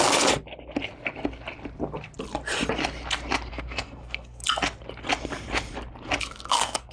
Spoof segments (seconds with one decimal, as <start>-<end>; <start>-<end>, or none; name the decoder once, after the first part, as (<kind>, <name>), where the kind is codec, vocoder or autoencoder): 3.5-4.4 (codec, SNAC); 6.2-6.9